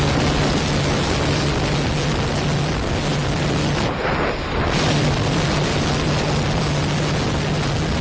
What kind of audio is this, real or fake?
real